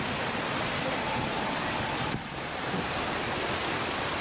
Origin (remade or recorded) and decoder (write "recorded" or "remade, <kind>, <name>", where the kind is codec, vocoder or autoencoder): recorded